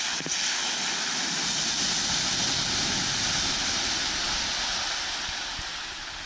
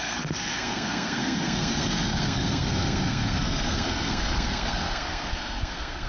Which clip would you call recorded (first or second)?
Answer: first